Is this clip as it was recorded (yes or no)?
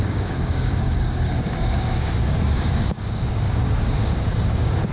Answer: no